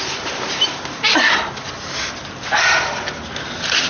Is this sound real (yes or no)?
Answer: yes